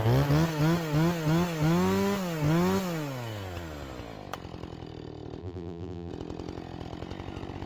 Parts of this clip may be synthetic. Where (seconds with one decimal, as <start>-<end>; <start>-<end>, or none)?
5.4-6.1